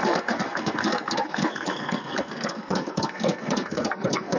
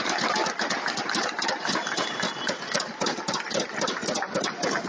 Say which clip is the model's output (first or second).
first